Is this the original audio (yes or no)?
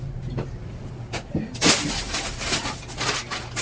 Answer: yes